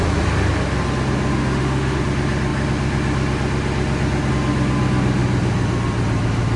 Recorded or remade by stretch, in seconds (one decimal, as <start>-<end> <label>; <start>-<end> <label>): 0.0-1.3 recorded; 1.3-2.0 remade; 2.0-6.6 recorded